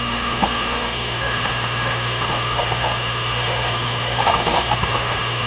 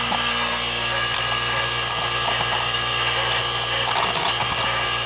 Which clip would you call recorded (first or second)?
second